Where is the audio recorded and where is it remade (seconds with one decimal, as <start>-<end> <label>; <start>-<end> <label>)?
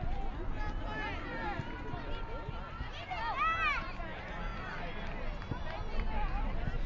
0.0-6.9 recorded